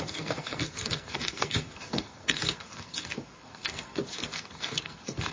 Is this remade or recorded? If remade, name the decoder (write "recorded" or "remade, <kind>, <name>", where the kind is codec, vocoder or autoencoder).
remade, codec, SNAC